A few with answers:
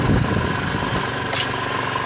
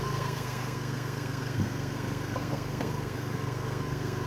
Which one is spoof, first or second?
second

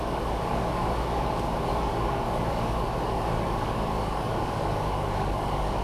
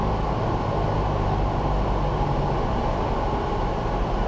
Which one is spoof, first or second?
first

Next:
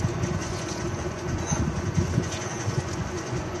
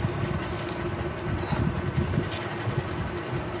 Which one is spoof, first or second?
first